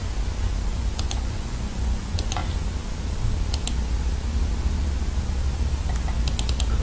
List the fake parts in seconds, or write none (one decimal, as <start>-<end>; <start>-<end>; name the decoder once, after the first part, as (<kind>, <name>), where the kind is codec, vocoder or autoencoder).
0.7-2.4 (vocoder, Vocos)